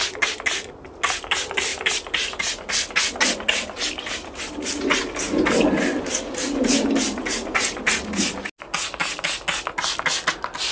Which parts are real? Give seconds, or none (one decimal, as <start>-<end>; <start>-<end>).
0.0-10.7